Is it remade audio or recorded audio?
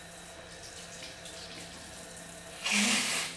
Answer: recorded